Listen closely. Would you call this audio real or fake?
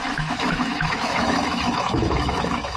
fake